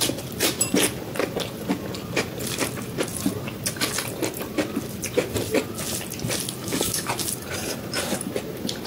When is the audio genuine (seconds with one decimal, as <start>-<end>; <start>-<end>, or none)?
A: 0.0-6.6; 7.1-8.9